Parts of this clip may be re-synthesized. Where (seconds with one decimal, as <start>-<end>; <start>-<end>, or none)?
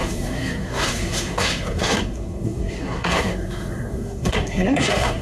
0.0-5.2